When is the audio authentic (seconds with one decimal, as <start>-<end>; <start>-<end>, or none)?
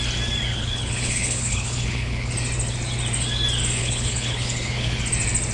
0.0-0.5; 2.3-3.8; 5.0-5.5